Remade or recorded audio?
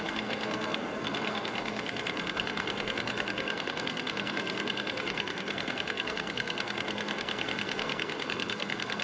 remade